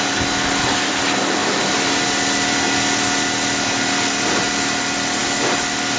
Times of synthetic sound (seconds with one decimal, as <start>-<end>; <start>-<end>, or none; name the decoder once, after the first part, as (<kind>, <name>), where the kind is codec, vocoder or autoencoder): none